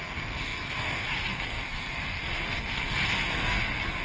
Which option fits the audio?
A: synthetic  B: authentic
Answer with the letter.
A